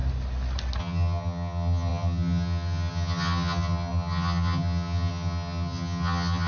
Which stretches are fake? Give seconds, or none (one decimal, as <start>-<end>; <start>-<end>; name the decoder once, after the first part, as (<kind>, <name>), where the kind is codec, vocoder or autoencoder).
0.8-6.5 (vocoder, HiFi-GAN)